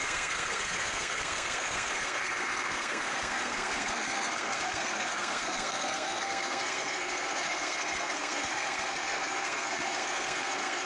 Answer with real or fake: fake